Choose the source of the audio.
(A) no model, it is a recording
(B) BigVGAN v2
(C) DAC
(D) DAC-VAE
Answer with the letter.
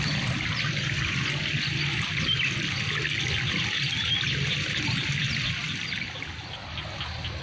A